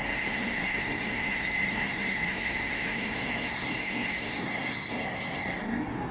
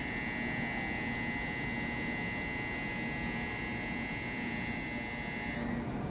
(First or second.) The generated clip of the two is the first